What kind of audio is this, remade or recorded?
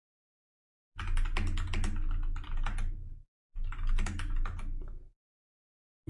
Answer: recorded